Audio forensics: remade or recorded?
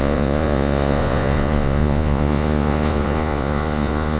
remade